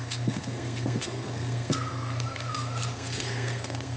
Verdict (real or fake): fake